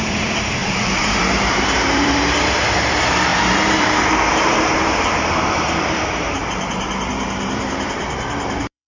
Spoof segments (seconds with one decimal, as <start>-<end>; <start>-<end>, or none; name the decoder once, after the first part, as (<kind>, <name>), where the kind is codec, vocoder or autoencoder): 0.0-6.4 (vocoder, BigVGAN v2); 7.1-8.9